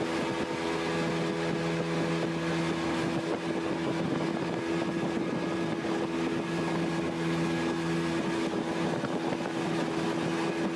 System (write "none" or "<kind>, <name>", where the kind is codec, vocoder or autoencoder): none